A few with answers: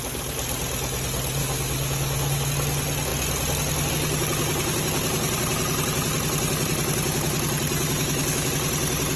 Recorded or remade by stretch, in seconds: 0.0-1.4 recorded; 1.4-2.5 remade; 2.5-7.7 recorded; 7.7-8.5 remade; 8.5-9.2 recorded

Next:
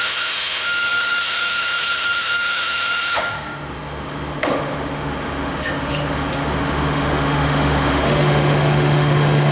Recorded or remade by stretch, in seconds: 0.0-9.5 remade

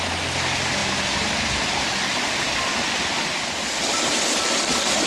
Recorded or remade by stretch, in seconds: 0.0-5.1 recorded

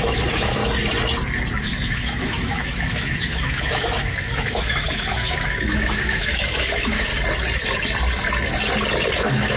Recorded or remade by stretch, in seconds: 0.0-0.6 remade; 0.6-1.6 recorded; 1.6-7.1 remade; 7.1-9.2 recorded; 9.2-9.6 remade

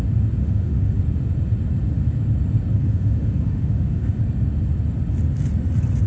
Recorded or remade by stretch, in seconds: 0.0-0.4 recorded; 0.4-1.0 remade; 1.0-2.7 recorded; 2.7-4.2 remade; 4.2-6.1 recorded

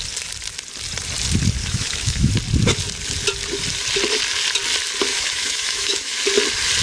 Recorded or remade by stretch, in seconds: 0.0-1.6 recorded; 1.6-2.3 remade; 2.3-5.1 recorded; 5.1-6.2 remade; 6.2-6.8 recorded

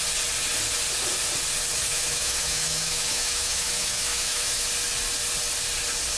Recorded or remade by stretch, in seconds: 0.0-1.9 recorded; 1.9-4.7 remade; 4.7-6.2 recorded

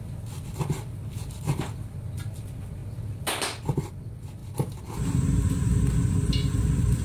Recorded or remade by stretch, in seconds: 0.0-7.0 recorded